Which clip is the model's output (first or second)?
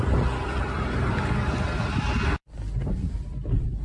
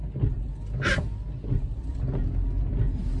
first